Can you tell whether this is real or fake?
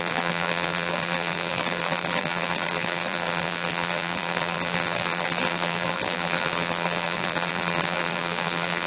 fake